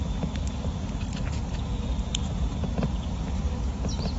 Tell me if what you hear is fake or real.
real